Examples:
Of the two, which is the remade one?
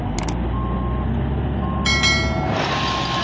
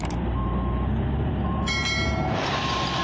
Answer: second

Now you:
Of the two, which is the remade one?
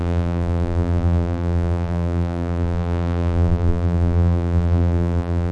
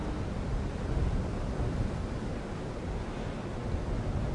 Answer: first